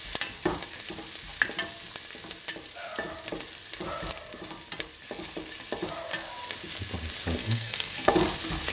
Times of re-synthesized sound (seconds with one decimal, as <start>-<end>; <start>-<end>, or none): 7.4-8.1